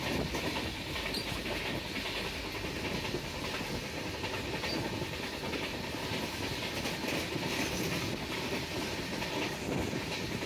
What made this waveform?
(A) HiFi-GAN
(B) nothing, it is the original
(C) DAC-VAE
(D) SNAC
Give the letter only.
B